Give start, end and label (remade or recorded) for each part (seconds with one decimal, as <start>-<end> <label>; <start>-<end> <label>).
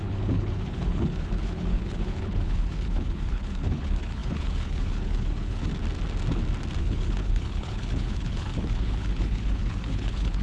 0.0-5.7 remade; 5.7-6.8 recorded; 6.8-10.4 remade